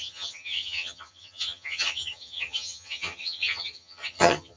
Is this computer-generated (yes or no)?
yes